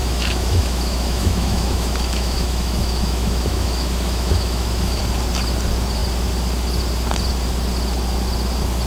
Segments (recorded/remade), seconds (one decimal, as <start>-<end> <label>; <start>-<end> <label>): 0.0-5.0 remade; 5.0-8.9 recorded